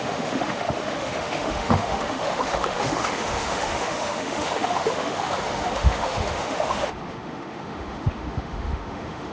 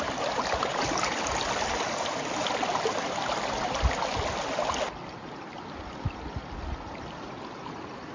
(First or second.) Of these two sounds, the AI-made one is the first